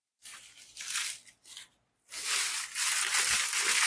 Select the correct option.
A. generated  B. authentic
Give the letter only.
B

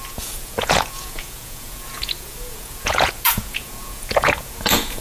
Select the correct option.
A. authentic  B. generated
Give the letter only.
B